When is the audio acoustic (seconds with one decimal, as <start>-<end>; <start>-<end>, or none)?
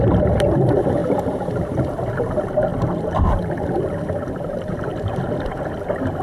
0.0-1.0; 2.1-4.9; 5.8-6.2